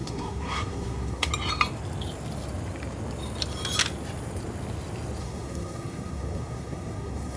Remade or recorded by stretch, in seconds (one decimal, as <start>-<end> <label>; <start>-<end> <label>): 0.0-1.3 remade; 1.3-5.2 recorded; 5.2-7.4 remade